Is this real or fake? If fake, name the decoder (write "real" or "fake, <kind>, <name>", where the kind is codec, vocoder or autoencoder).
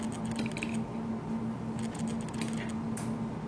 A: real